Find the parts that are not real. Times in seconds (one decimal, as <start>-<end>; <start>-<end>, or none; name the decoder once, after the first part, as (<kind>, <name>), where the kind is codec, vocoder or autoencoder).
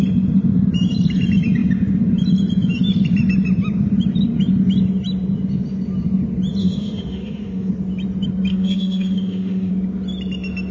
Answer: 6.6-7.7 (autoencoder, DAC-VAE); 8.5-9.7